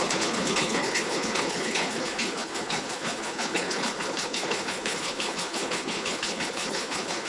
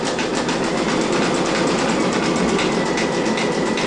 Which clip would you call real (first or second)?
second